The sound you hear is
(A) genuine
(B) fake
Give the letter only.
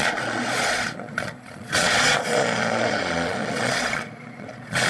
B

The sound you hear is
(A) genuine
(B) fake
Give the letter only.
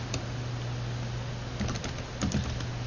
A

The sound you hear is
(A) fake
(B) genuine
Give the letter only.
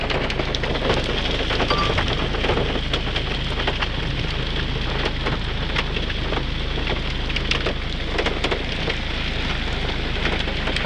B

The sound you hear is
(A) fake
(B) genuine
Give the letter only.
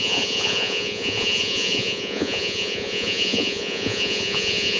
A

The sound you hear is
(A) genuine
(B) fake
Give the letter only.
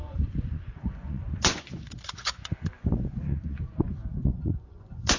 B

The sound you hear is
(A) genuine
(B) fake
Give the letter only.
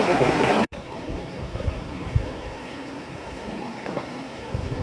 B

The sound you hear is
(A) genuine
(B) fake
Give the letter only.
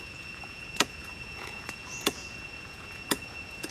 B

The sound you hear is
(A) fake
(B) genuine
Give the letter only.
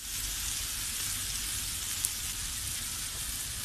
B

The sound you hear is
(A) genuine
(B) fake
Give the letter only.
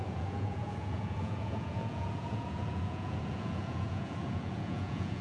B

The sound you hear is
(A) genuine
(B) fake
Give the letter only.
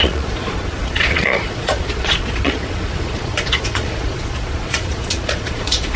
B